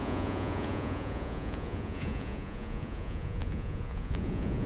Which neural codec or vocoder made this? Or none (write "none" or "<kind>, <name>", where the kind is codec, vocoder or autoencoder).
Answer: vocoder, Vocos